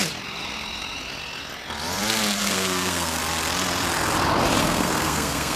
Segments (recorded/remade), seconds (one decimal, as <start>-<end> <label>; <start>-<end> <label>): 0.0-2.4 recorded; 2.4-3.2 remade; 3.2-4.6 recorded; 4.6-5.6 remade